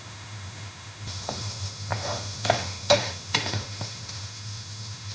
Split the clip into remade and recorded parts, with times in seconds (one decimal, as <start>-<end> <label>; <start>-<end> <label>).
0.0-5.1 remade